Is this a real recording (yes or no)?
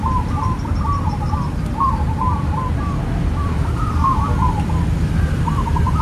no